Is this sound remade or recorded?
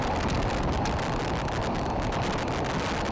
recorded